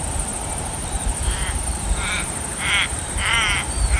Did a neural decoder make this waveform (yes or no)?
yes